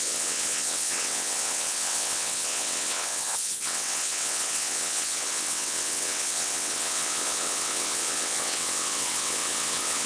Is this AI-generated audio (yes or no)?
yes